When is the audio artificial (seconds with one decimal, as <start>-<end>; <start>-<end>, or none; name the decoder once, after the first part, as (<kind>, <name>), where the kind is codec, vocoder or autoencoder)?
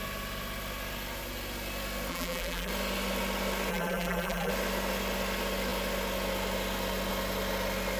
2.1-2.7 (vocoder, BigVGAN v2); 3.7-4.5